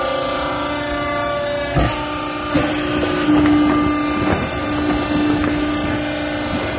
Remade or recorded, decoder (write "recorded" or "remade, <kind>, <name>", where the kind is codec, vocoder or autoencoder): recorded